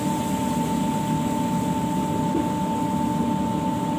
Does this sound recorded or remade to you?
recorded